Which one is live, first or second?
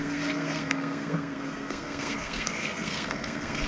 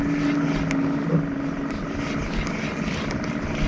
second